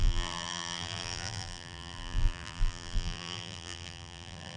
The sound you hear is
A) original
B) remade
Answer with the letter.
B